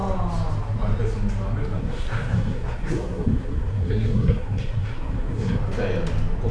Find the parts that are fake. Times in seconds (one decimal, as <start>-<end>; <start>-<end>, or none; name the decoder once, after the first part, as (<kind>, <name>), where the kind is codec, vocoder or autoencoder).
1.8-5.6 (codec, SNAC)